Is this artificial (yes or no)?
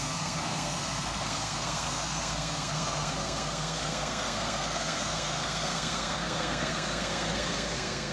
yes